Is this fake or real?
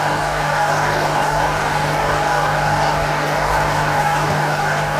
fake